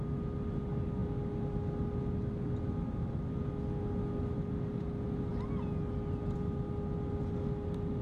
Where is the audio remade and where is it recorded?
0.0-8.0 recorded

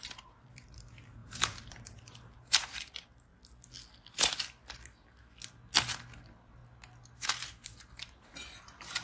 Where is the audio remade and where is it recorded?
0.0-3.3 remade; 3.3-6.0 recorded; 6.0-6.6 remade; 6.6-7.2 recorded; 7.2-9.0 remade

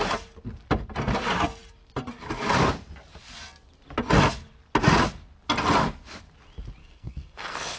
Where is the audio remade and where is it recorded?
0.0-6.8 recorded; 6.8-7.8 remade

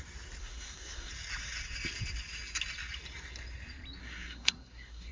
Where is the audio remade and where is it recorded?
0.0-0.4 recorded; 0.4-1.1 remade; 1.1-4.0 recorded; 4.0-5.1 remade

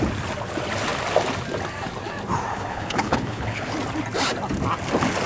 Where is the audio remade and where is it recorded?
0.0-2.5 recorded; 2.5-3.7 remade; 3.7-5.3 recorded